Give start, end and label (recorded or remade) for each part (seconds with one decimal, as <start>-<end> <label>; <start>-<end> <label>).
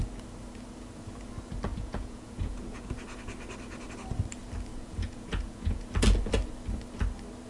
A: 0.0-1.7 recorded; 1.7-2.9 remade; 2.9-4.7 recorded; 4.7-5.9 remade; 5.9-7.5 recorded